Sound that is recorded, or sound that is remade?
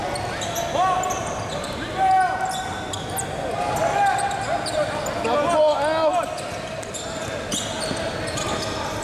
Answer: recorded